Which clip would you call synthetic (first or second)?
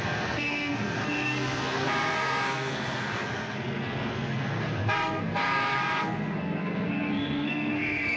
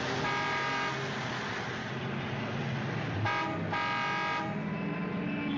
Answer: first